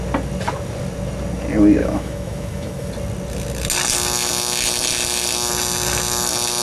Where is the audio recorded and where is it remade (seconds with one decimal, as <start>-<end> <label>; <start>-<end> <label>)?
0.0-1.8 recorded; 1.8-2.9 remade; 2.9-6.6 recorded